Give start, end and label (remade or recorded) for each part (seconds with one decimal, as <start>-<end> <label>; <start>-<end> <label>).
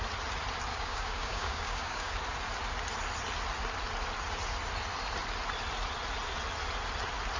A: 0.0-0.7 recorded; 0.7-2.1 remade; 2.1-7.4 recorded